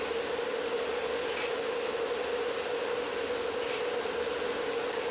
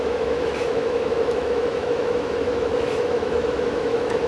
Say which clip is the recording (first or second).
first